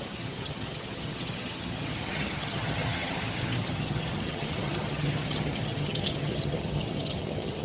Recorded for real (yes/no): no